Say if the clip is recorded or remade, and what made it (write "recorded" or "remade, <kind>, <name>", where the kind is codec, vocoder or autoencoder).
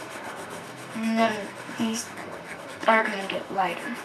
remade, codec, SNAC